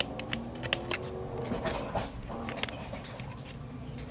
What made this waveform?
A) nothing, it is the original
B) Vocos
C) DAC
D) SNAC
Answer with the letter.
A